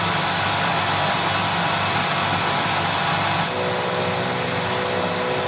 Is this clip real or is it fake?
real